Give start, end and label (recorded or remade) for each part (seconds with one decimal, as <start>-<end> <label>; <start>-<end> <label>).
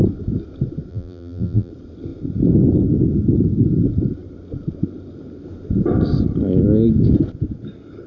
0.0-0.9 recorded; 0.9-1.7 remade; 1.7-8.1 recorded